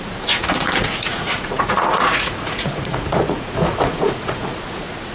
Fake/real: fake